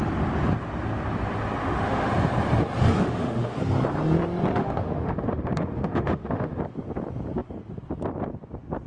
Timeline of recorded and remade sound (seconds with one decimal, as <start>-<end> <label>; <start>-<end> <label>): 0.0-1.6 recorded; 1.6-2.1 remade; 2.1-3.0 recorded; 3.0-3.6 remade; 3.6-4.6 recorded; 4.6-6.6 remade; 6.6-8.9 recorded